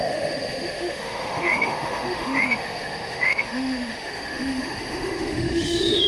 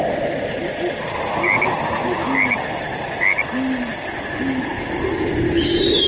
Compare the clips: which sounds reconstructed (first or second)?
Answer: first